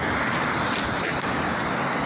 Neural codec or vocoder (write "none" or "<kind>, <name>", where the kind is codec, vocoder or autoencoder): none